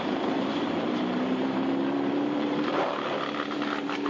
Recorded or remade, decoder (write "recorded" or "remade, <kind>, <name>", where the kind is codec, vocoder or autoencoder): remade, vocoder, BigVGAN v2